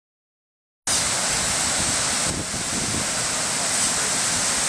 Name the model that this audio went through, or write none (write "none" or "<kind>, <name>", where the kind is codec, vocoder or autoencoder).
none